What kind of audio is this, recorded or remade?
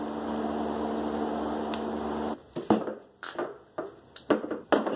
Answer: recorded